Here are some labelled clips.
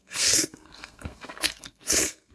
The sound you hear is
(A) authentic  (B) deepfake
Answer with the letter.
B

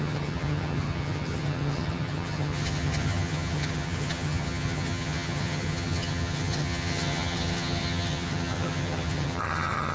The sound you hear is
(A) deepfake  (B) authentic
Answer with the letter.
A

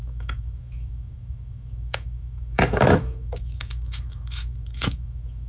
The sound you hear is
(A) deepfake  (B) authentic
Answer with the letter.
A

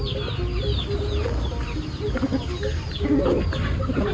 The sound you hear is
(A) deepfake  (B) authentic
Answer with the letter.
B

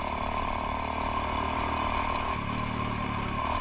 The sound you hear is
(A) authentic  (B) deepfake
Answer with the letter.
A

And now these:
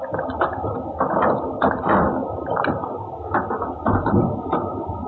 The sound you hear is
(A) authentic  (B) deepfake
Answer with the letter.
A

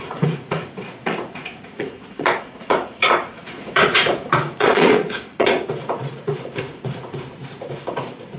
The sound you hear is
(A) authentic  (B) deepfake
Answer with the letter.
B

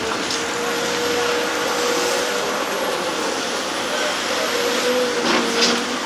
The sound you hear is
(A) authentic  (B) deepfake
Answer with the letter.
A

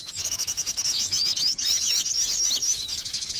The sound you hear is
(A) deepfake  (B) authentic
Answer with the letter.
A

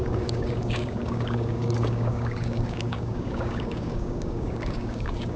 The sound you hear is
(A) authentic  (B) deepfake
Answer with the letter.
B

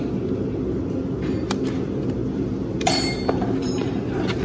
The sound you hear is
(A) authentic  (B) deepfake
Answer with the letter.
A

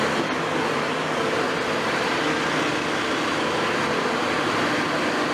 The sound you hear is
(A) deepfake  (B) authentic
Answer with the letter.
B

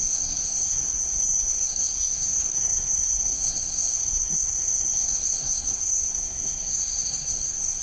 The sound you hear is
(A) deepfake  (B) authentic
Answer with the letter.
A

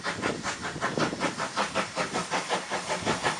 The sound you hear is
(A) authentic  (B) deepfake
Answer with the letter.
A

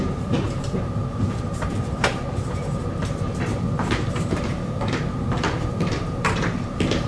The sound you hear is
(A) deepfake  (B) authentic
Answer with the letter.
A